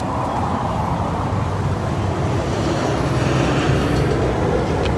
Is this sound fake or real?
real